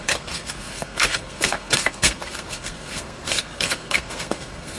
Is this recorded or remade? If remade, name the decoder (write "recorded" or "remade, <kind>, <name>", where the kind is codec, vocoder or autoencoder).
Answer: remade, codec, SNAC